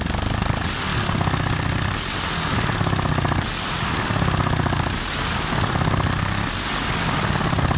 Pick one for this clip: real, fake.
real